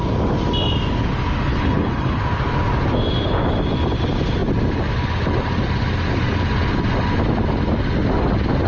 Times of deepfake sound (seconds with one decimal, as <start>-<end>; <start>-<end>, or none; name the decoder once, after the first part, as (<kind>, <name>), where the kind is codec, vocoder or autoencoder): 1.5-2.2 (codec, HILCodec)